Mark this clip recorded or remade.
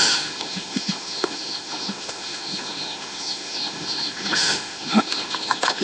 remade